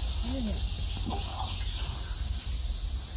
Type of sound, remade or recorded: recorded